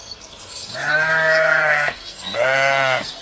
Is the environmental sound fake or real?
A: fake